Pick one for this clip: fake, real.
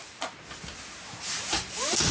real